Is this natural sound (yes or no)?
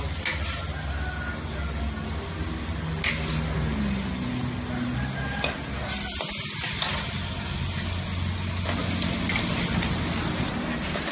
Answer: yes